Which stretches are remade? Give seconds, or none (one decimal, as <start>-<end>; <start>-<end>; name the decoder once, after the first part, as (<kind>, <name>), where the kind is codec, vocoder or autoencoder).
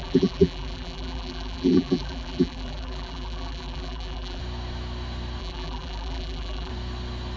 0.0-4.4 (vocoder, BigVGAN v2); 5.4-6.7